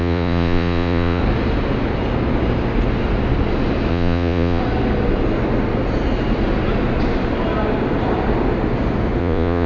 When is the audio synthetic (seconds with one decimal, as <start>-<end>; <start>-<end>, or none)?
0.0-1.2; 3.9-4.6; 9.2-9.7